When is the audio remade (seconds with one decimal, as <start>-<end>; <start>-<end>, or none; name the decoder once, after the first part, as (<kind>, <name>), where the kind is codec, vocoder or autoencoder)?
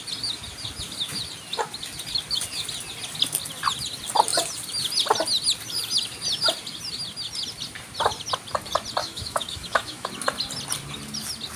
9.0-10.1 (autoencoder, DAC-VAE)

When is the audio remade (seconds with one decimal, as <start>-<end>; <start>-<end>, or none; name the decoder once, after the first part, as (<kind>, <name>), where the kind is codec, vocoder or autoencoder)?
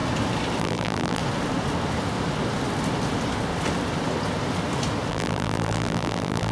0.6-1.2 (vocoder, BigVGAN v2); 5.1-6.5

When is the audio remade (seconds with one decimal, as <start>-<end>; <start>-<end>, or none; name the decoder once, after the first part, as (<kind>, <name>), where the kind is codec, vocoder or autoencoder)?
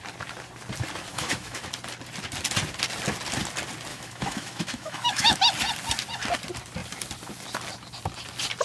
1.1-1.6 (autoencoder, DAC-VAE); 3.9-5.4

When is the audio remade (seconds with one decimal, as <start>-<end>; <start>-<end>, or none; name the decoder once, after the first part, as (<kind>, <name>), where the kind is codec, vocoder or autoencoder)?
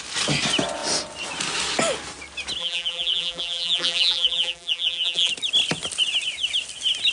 2.6-5.3 (vocoder, BigVGAN v2)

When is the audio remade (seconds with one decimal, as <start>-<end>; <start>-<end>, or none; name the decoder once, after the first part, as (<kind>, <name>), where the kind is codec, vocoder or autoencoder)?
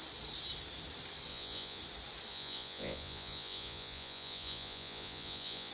1.3-1.8 (vocoder, Vocos); 2.3-5.7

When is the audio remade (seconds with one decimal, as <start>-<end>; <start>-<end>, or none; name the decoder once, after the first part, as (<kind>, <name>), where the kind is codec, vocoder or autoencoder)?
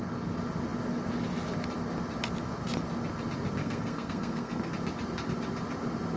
3.6-4.7 (codec, SNAC)